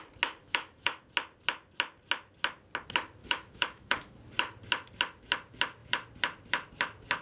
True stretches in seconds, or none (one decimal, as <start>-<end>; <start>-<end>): 0.0-0.4; 1.0-3.2; 4.1-7.2